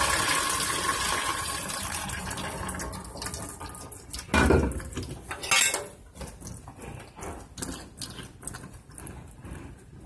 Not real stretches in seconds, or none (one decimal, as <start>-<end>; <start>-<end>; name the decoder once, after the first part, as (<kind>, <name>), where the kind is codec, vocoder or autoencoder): 1.3-2.3 (vocoder, BigVGAN v2)